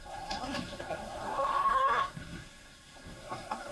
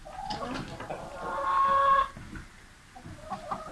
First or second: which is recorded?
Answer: second